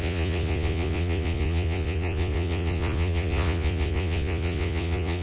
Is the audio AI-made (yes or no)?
yes